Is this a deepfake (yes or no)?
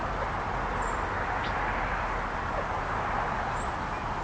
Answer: no